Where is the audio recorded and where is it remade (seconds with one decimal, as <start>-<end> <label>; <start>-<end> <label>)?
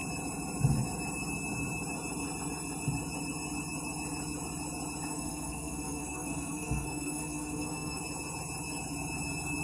0.0-5.1 recorded; 5.1-8.0 remade; 8.0-9.6 recorded